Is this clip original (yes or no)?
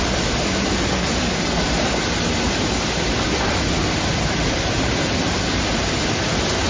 no